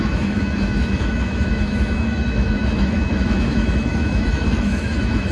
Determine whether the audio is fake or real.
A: fake